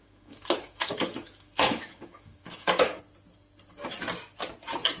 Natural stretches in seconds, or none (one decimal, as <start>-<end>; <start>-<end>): 3.0-5.0